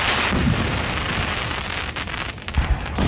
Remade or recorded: recorded